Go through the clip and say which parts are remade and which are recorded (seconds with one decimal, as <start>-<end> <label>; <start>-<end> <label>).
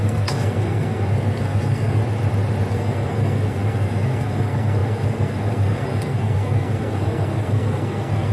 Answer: 0.0-2.0 remade; 2.0-2.7 recorded; 2.7-8.3 remade